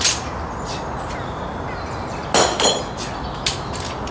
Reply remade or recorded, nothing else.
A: recorded